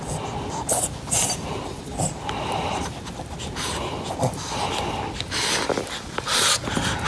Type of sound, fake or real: real